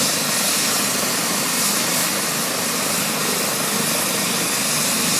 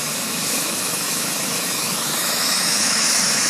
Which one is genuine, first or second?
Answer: first